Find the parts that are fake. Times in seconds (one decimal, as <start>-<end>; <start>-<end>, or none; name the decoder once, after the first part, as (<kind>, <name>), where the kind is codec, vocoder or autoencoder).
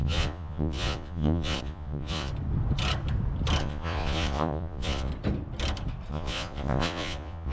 0.0-2.3 (vocoder, Vocos); 3.6-5.1; 6.1-7.5